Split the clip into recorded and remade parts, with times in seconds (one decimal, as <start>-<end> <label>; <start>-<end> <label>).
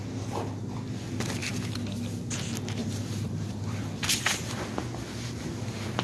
0.0-2.8 recorded; 2.8-4.6 remade; 4.6-6.0 recorded